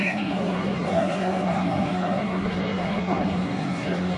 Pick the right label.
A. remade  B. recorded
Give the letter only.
A